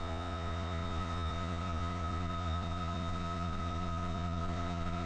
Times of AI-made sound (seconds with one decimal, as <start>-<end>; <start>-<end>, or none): 0.0-5.1